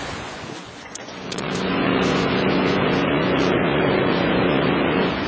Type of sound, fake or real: fake